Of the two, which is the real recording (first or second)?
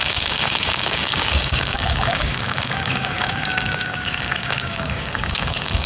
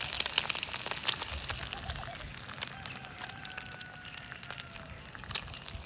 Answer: second